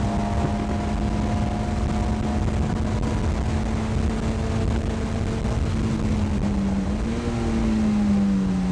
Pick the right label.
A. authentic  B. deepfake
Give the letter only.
A